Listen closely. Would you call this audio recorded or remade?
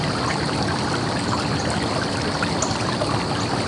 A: recorded